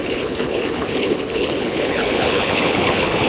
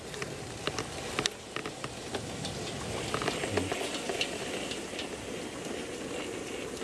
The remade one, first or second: first